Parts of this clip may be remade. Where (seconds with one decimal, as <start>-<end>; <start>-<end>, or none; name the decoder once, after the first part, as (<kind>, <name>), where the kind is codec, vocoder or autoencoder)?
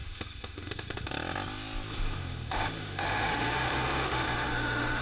0.0-1.1 (autoencoder, DAC-VAE); 1.9-5.0